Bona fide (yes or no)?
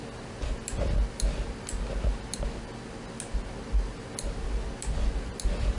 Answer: yes